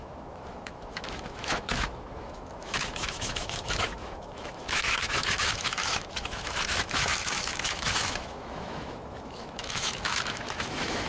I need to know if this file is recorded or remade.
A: remade